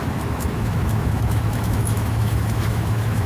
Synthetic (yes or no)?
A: yes